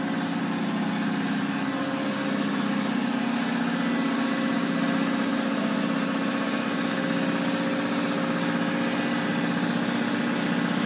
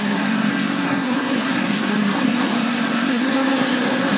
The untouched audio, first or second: first